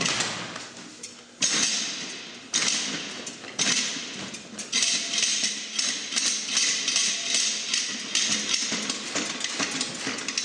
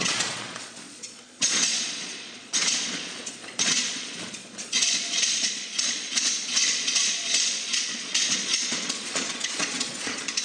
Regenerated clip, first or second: second